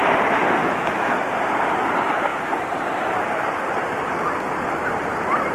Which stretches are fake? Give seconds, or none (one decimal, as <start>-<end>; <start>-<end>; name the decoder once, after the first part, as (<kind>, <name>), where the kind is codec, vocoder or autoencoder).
0.6-1.2 (autoencoder, DAC-VAE)